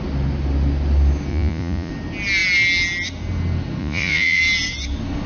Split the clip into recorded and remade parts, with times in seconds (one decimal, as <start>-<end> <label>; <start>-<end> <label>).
0.0-1.3 recorded; 1.3-1.9 remade; 1.9-3.8 recorded; 3.8-4.4 remade; 4.4-5.3 recorded